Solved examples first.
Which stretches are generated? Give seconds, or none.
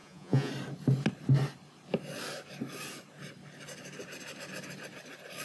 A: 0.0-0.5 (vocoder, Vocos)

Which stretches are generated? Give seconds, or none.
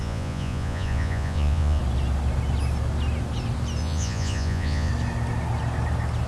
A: 0.0-1.8 (vocoder, Vocos); 3.8-4.9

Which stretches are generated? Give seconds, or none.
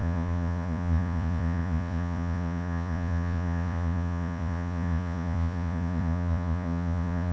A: 0.0-7.3 (vocoder, Vocos)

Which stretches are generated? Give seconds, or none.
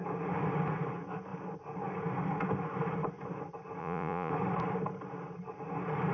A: 3.8-4.3 (vocoder, Vocos)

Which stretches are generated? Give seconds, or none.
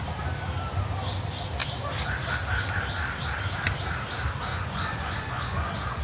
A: 4.5-6.0 (vocoder, Vocos)